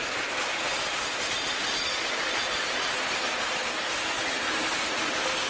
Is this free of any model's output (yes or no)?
yes